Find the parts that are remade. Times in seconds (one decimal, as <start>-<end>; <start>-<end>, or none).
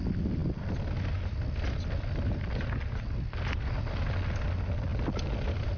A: none